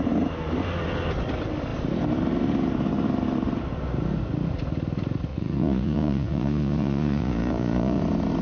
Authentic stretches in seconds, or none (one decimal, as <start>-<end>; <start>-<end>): 0.0-5.3; 8.0-8.4